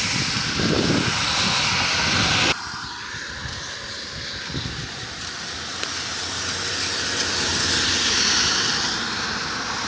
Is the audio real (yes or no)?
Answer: yes